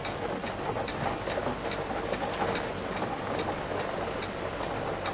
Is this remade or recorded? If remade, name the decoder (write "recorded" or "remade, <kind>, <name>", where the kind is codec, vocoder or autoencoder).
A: recorded